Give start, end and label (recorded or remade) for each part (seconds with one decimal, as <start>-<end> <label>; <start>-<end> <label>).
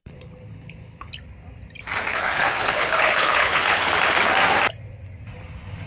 0.0-1.1 remade; 1.1-2.1 recorded; 2.1-3.9 remade; 3.9-5.9 recorded